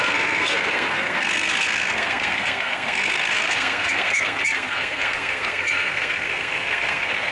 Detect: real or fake fake